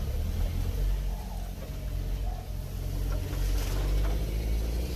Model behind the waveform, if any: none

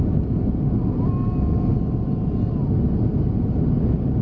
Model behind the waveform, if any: none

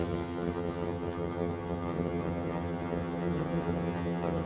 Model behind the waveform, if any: vocoder, HiFi-GAN